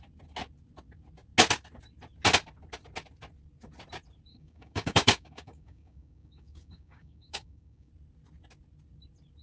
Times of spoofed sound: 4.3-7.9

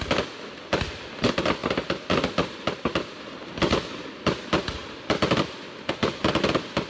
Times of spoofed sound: none

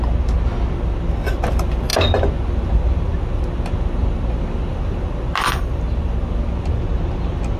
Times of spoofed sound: none